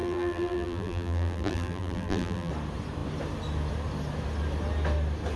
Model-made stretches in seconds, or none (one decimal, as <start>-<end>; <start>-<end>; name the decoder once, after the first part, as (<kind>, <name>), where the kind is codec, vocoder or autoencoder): 0.0-2.5 (vocoder, BigVGAN v2)